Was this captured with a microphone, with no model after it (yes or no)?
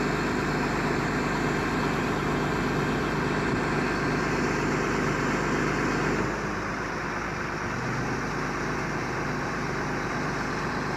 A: yes